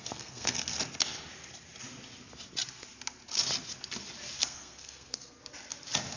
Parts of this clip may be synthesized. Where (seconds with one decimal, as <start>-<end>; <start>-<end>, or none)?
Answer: 0.0-0.7; 4.4-5.4

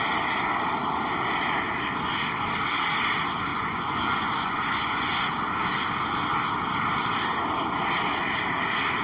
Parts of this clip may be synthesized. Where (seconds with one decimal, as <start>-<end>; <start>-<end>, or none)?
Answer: 3.5-5.3

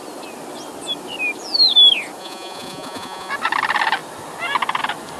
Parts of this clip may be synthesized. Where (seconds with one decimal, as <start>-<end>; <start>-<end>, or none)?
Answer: 2.2-3.3

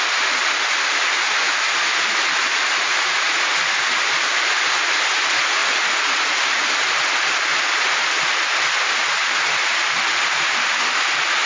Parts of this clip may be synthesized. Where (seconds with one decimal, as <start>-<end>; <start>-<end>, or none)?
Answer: 2.5-3.7; 5.6-6.4

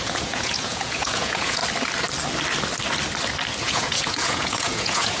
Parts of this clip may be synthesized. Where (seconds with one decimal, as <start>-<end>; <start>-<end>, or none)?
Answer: 0.0-1.6; 3.6-5.2

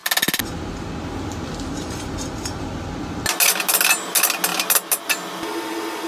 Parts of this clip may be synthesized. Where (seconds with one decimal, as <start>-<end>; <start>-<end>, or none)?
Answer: none